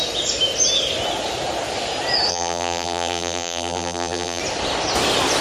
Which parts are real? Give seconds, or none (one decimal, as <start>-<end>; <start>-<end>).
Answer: 0.0-2.3; 4.4-5.4